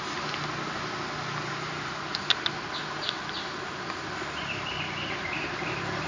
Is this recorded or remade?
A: recorded